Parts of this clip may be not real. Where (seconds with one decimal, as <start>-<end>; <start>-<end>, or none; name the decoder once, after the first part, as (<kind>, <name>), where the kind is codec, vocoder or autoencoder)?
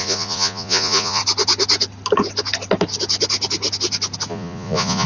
0.0-1.2 (vocoder, Vocos); 4.3-5.1